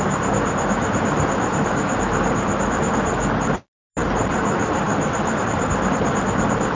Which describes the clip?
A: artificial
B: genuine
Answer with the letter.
B